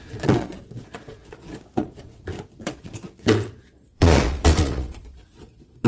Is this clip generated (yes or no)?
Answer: yes